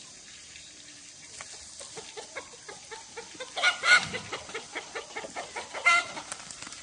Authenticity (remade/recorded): recorded